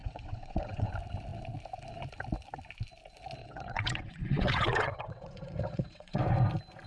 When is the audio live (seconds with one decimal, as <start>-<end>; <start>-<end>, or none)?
0.9-3.4; 6.2-6.9